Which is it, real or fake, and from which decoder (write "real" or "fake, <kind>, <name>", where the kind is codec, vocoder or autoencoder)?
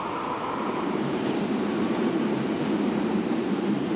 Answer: fake, vocoder, BigVGAN v2